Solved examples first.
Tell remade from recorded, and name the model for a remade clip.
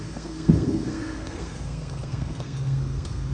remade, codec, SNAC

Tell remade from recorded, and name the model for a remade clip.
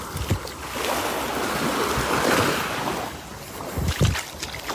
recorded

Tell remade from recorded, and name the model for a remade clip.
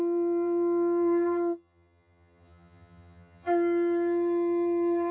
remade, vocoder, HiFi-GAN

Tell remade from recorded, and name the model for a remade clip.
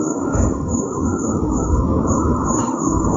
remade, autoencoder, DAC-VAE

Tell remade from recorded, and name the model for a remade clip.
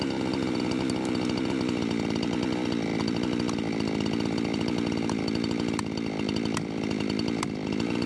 remade, vocoder, BigVGAN v2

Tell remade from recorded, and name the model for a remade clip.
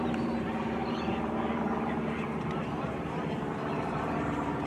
remade, vocoder, BigVGAN v2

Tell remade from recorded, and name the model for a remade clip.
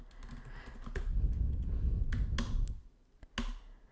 recorded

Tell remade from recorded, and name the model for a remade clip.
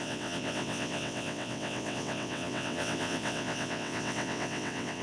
remade, vocoder, WaveNeXt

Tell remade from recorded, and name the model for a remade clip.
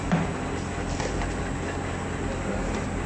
recorded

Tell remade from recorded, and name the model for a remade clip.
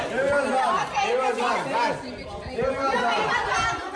recorded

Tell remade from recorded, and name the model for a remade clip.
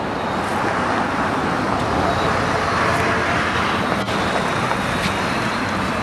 recorded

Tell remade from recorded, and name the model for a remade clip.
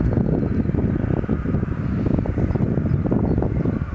recorded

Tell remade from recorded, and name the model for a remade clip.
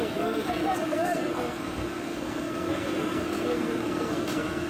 remade, codec, SNAC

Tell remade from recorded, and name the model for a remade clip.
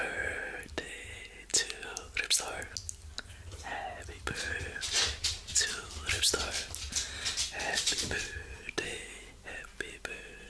recorded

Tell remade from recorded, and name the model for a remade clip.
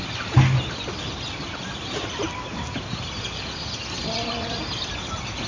recorded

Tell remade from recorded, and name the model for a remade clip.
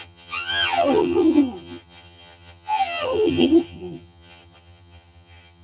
remade, vocoder, HiFi-GAN